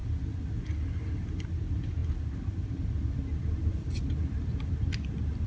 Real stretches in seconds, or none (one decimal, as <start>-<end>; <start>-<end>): 0.0-5.5